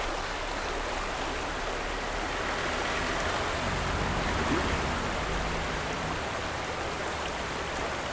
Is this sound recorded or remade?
recorded